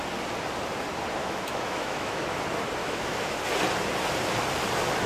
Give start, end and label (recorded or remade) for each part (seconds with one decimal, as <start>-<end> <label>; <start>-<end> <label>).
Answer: 0.0-1.2 recorded; 1.2-2.4 remade; 2.4-2.8 recorded; 2.8-3.4 remade; 3.4-5.1 recorded